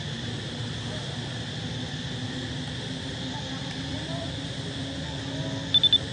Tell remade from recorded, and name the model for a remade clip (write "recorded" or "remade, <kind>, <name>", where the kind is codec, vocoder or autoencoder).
recorded